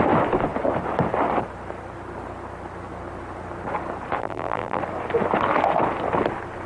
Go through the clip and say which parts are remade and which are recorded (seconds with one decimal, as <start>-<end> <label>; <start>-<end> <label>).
0.0-4.2 recorded; 4.2-4.8 remade; 4.8-6.7 recorded